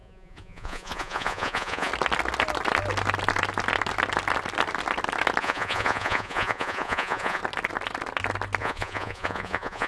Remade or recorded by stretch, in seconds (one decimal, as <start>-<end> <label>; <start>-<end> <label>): 0.0-1.9 remade; 1.9-5.4 recorded; 5.4-7.4 remade; 7.4-8.6 recorded; 8.6-9.9 remade

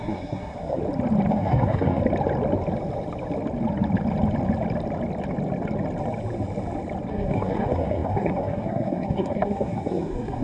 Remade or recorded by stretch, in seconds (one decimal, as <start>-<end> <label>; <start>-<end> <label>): 0.0-0.8 remade; 0.8-1.3 recorded; 1.3-2.0 remade; 2.0-7.1 recorded; 7.1-10.4 remade